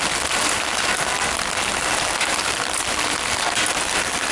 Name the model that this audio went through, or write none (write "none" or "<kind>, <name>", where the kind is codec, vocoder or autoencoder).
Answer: none